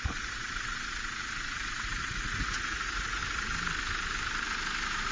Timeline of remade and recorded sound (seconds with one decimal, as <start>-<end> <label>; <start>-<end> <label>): 0.0-3.2 remade; 3.2-5.1 recorded